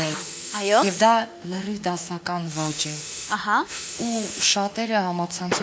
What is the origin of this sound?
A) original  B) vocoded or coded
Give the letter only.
B